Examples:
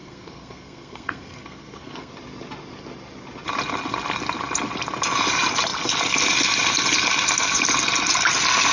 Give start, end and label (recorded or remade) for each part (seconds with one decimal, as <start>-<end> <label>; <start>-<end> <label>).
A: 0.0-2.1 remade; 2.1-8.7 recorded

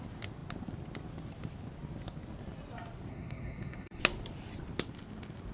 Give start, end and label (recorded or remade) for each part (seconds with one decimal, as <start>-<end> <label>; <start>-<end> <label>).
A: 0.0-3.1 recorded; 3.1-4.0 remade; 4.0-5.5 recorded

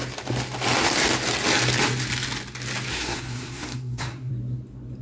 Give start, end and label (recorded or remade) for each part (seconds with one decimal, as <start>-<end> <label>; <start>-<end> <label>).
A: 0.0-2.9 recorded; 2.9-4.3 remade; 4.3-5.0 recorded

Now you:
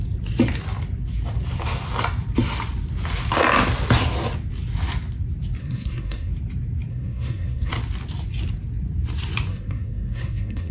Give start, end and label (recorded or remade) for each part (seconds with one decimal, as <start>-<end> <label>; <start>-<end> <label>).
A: 0.0-5.6 recorded; 5.6-6.3 remade; 6.3-6.9 recorded; 6.9-7.7 remade; 7.7-9.5 recorded; 9.5-10.7 remade

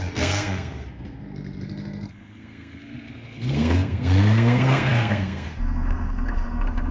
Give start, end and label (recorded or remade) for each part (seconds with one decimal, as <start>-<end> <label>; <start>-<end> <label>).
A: 0.0-6.9 remade

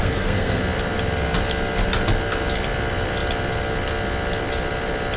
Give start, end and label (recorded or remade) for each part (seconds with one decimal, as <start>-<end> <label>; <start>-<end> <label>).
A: 0.0-0.6 remade; 0.6-5.2 recorded